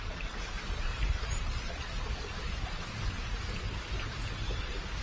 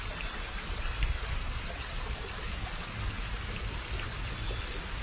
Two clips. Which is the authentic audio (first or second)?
second